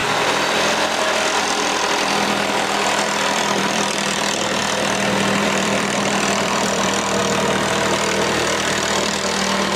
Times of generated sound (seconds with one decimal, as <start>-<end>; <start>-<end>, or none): 0.0-4.6; 5.4-7.2; 7.7-9.8